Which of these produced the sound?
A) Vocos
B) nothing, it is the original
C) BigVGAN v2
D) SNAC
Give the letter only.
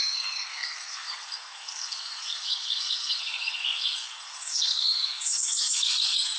D